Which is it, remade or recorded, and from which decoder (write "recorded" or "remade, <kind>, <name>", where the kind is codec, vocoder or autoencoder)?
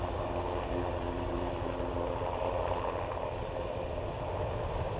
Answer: recorded